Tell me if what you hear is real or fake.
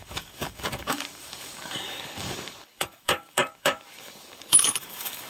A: fake